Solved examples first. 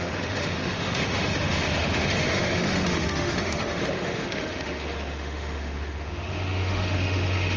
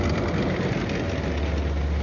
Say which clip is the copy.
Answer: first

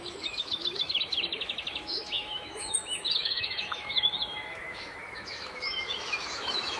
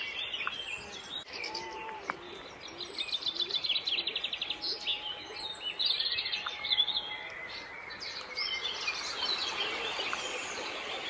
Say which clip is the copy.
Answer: first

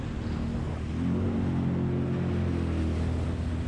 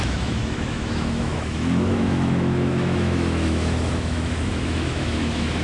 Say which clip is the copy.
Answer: second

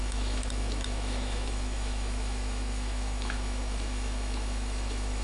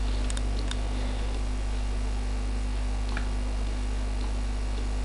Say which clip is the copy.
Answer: first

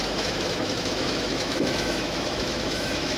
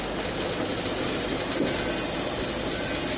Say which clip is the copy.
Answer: first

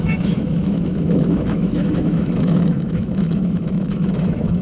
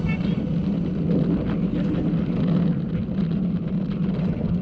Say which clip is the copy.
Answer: first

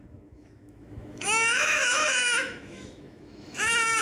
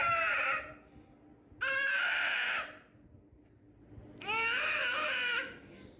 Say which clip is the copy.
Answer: first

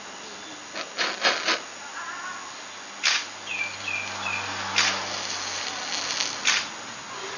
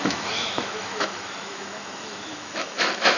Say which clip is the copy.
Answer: second